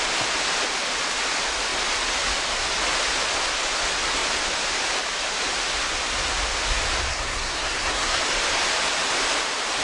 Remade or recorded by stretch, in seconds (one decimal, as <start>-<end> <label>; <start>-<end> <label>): 0.0-7.1 recorded; 7.1-8.2 remade; 8.2-9.8 recorded